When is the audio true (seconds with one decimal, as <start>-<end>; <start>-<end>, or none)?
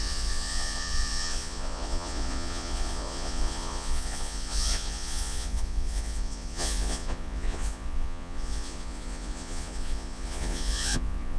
none